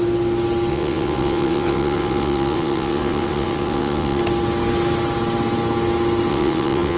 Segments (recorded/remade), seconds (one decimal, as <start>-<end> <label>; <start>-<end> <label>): 0.0-0.7 recorded; 0.7-4.2 remade; 4.2-6.3 recorded; 6.3-7.0 remade

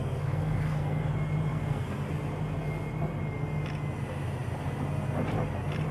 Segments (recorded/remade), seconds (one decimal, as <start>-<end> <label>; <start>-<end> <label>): 0.0-1.1 remade; 1.1-1.5 recorded; 1.5-2.1 remade; 2.1-5.9 recorded

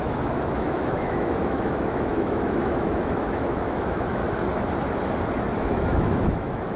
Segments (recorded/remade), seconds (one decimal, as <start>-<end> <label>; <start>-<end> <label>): 0.0-4.2 remade; 4.2-5.6 recorded; 5.6-6.8 remade

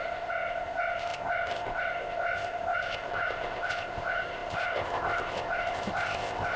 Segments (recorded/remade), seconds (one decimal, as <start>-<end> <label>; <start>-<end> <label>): 0.0-6.6 remade

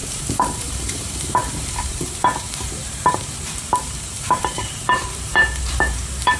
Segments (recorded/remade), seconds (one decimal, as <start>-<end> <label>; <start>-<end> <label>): 0.0-6.4 remade

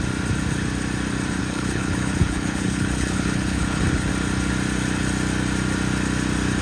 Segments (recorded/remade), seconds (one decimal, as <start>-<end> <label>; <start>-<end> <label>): 0.0-1.4 recorded; 1.4-4.1 remade; 4.1-6.6 recorded

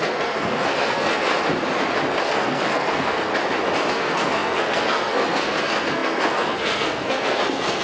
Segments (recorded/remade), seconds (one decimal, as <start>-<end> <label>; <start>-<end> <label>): 0.0-1.3 remade; 1.3-2.2 recorded; 2.2-3.3 remade; 3.3-3.9 recorded; 3.9-7.8 remade

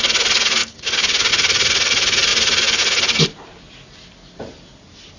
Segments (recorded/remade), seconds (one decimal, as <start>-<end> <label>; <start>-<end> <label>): 0.0-0.6 recorded; 0.6-1.3 remade; 1.3-5.2 recorded